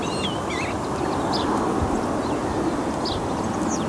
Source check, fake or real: real